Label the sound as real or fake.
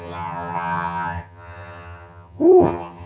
fake